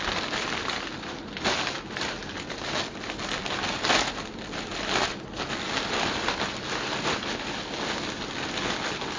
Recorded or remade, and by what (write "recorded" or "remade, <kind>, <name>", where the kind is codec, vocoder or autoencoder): recorded